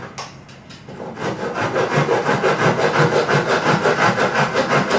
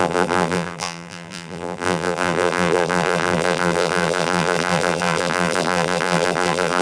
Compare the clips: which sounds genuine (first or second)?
first